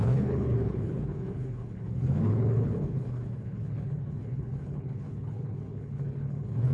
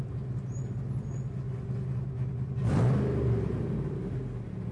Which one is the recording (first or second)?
second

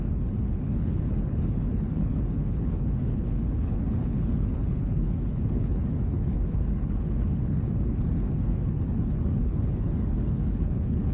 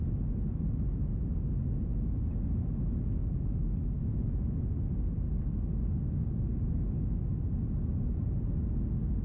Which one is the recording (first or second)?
second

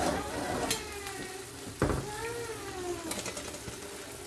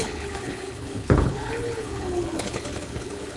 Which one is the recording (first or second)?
first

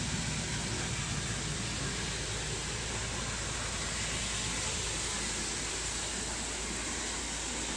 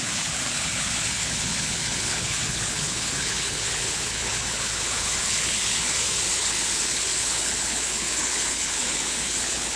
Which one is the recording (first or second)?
first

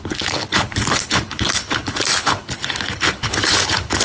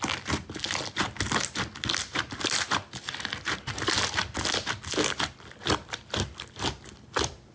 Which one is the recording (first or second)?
second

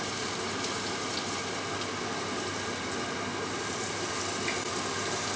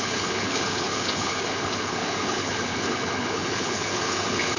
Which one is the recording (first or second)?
first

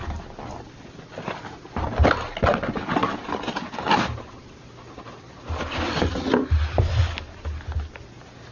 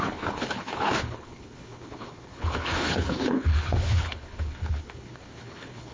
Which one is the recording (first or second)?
first